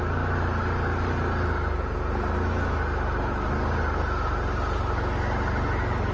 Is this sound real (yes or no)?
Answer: yes